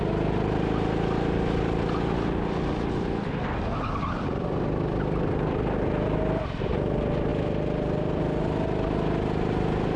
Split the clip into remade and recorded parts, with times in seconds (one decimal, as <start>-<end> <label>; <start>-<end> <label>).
0.0-10.0 recorded